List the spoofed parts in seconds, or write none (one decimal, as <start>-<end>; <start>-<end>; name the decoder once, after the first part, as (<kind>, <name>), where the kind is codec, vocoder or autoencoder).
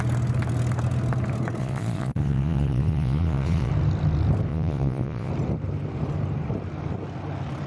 1.6-3.7 (vocoder, Vocos); 4.5-5.3